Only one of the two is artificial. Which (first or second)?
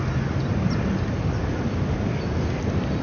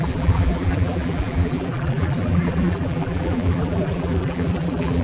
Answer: second